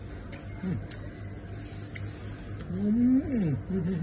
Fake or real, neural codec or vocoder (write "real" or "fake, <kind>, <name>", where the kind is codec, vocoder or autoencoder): real